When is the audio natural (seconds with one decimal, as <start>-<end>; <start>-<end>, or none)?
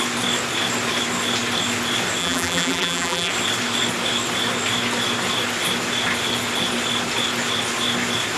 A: 0.0-2.2; 3.3-8.4